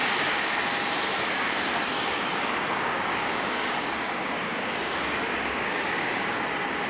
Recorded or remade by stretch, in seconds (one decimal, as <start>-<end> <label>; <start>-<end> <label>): 0.0-0.5 remade; 0.5-2.3 recorded; 2.3-6.4 remade; 6.4-6.9 recorded

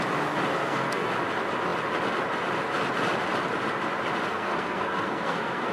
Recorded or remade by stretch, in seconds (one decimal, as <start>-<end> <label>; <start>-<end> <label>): 0.0-0.6 recorded; 0.6-1.1 remade; 1.1-4.3 recorded; 4.3-5.7 remade

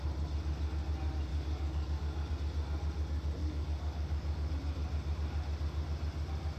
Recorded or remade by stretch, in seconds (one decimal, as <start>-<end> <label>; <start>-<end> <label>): 0.0-1.3 recorded; 1.3-2.3 remade; 2.3-3.4 recorded; 3.4-4.5 remade; 4.5-6.6 recorded

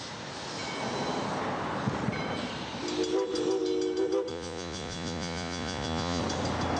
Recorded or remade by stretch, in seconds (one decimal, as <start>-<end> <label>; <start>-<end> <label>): 0.0-4.3 recorded; 4.3-6.2 remade; 6.2-6.8 recorded

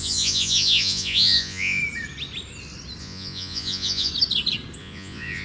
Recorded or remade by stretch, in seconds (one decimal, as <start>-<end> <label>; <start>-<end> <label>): 0.0-1.8 remade; 1.8-3.0 recorded; 3.0-4.1 remade; 4.1-4.8 recorded; 4.8-5.4 remade

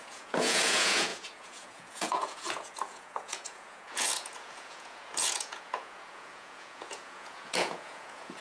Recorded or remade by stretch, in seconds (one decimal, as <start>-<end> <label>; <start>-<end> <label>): 0.0-8.4 remade

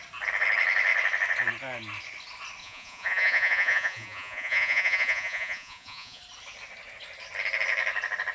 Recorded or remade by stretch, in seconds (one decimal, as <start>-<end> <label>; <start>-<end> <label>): 0.0-2.6 recorded; 2.6-6.2 remade; 6.2-8.3 recorded

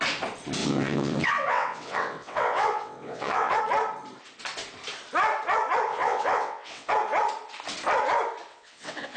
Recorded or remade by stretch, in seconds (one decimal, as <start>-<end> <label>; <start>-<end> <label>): 0.0-0.6 recorded; 0.6-3.6 remade; 3.6-5.9 recorded; 5.9-6.9 remade; 6.9-8.5 recorded; 8.5-9.2 remade